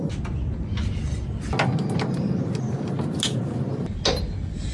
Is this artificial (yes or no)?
no